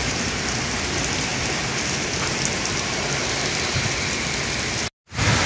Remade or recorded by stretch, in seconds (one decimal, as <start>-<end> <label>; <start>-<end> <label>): 0.0-5.5 recorded